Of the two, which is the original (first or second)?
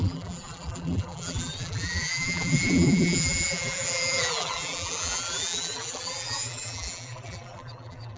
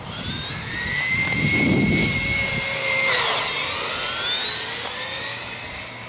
second